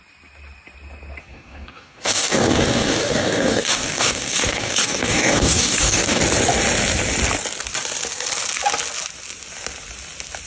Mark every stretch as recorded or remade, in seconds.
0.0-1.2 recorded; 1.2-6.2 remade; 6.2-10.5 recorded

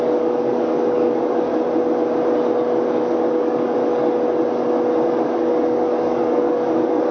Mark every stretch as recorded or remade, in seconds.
0.0-1.5 remade; 1.5-3.3 recorded; 3.3-3.8 remade; 3.8-5.0 recorded; 5.0-7.1 remade

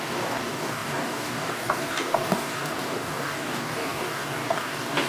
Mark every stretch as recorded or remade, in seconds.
0.0-5.1 remade

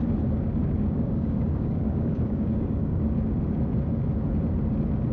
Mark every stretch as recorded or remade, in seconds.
0.0-0.6 recorded; 0.6-3.0 remade; 3.0-5.1 recorded

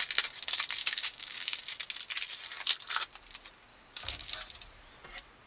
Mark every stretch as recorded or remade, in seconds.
0.0-0.8 recorded; 0.8-1.6 remade; 1.6-3.7 recorded; 3.7-4.3 remade; 4.3-5.5 recorded

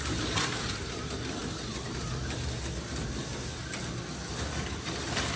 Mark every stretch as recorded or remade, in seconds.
0.0-5.4 recorded

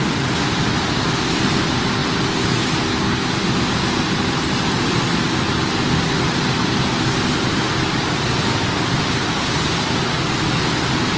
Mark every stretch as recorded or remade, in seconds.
0.0-11.2 recorded